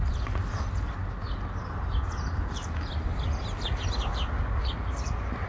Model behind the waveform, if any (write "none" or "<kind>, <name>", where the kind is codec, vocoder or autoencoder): none